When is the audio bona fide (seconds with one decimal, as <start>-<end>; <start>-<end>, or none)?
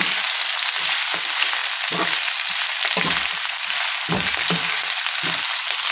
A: 0.0-5.9